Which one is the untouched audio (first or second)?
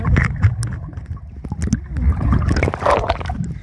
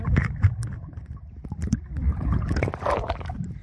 first